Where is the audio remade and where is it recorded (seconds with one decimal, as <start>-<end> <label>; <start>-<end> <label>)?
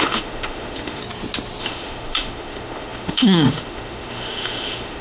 0.0-1.0 remade; 1.0-1.6 recorded; 1.6-5.0 remade